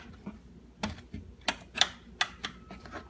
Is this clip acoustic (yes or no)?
yes